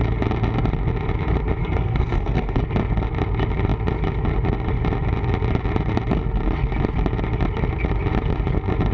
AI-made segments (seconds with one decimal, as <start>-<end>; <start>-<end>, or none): 1.6-2.6